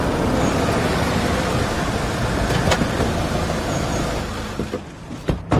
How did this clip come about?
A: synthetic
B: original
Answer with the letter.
B